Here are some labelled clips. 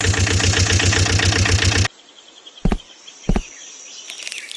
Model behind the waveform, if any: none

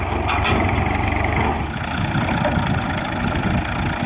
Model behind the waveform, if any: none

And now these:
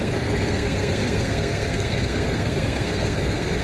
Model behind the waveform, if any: codec, SNAC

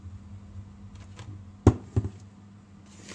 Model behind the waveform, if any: none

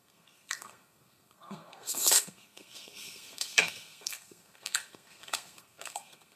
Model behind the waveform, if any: codec, SNAC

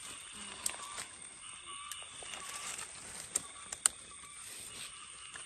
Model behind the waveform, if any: none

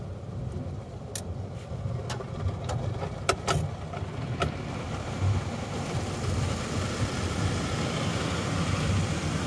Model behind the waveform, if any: none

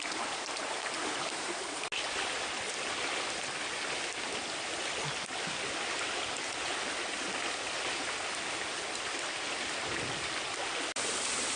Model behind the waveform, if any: none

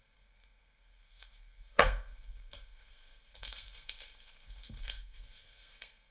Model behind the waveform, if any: codec, SNAC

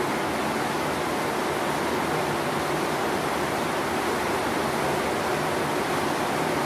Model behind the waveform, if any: none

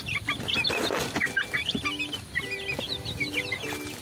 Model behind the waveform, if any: none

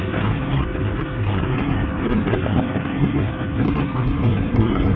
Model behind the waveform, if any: codec, SNAC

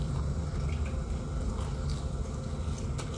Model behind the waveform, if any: none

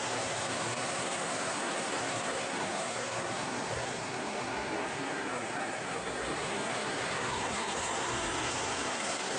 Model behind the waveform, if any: codec, SNAC